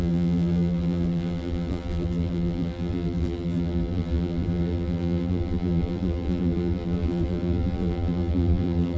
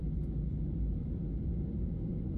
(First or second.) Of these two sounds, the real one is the second